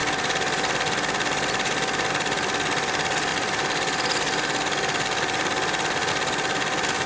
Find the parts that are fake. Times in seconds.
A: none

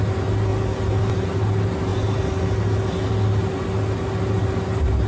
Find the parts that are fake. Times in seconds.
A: none

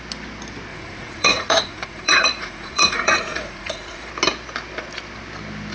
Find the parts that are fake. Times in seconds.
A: 0.7-4.1

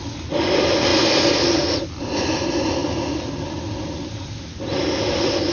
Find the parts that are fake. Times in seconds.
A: none

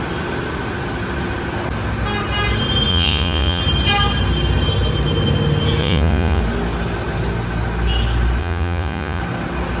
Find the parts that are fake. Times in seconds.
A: 2.9-3.6; 5.8-6.4; 8.4-9.2

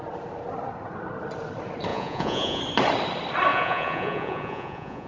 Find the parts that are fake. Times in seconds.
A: 1.9-2.6; 3.5-5.1